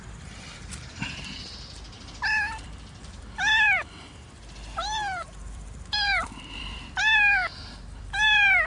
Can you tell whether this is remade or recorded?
remade